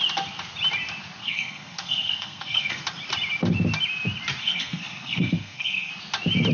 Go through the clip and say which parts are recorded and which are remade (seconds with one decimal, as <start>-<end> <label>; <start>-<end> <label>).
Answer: 0.0-1.2 recorded; 1.2-2.8 remade; 2.8-4.4 recorded; 4.4-5.9 remade; 5.9-6.5 recorded